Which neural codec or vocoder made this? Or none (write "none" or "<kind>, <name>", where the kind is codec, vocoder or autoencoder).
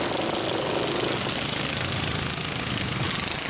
none